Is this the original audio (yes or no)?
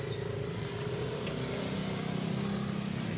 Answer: yes